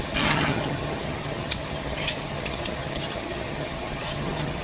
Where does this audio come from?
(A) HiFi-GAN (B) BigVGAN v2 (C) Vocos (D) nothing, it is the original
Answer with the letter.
A